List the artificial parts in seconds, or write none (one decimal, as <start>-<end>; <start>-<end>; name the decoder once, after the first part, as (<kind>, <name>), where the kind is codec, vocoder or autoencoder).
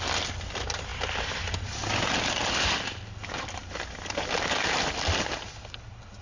none